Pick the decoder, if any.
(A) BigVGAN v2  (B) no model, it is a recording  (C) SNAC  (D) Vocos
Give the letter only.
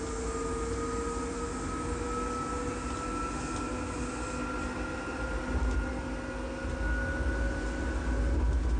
B